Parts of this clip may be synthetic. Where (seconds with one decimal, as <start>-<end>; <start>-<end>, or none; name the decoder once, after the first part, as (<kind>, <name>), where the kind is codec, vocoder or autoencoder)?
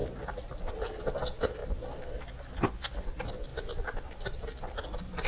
0.0-0.6 (vocoder, BigVGAN v2); 3.5-5.3